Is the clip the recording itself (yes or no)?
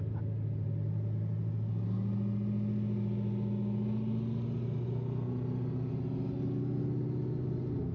yes